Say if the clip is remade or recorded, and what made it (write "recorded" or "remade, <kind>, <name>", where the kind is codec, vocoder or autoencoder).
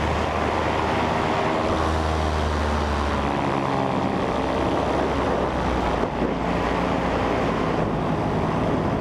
recorded